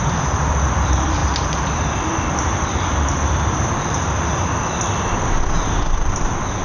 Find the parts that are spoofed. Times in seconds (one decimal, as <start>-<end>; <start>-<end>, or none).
0.0-2.7; 3.2-6.6